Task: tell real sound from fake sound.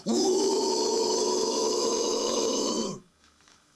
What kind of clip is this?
fake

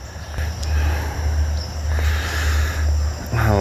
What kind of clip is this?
real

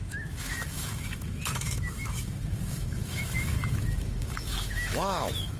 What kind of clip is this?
fake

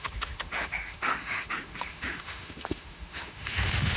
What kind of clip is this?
fake